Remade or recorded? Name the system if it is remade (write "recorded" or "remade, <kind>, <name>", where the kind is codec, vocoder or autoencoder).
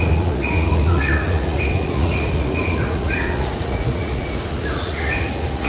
remade, vocoder, Vocos